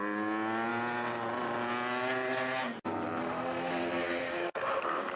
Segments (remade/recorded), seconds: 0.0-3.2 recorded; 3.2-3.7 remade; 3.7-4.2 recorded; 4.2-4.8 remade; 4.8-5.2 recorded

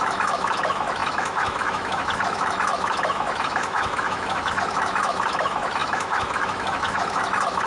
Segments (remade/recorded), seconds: 0.0-7.7 remade

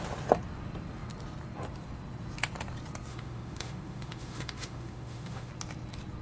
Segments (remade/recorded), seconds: 0.0-3.1 recorded; 3.1-5.5 remade; 5.5-6.2 recorded

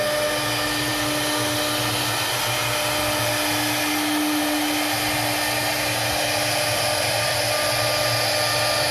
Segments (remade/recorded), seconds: 0.0-8.9 recorded

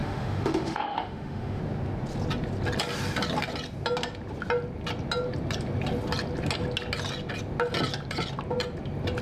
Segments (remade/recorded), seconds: 0.0-1.6 remade; 1.6-9.2 recorded

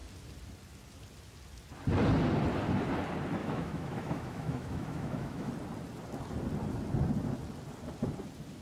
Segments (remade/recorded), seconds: 0.0-3.4 recorded; 3.4-5.5 remade; 5.5-8.6 recorded

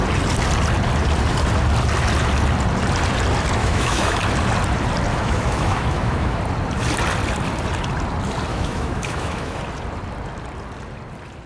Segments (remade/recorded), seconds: 0.0-3.6 recorded; 3.6-4.2 remade; 4.2-5.1 recorded; 5.1-6.4 remade; 6.4-8.5 recorded; 8.5-9.6 remade; 9.6-11.5 recorded

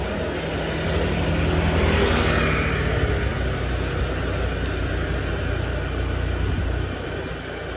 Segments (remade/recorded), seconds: 0.0-7.8 recorded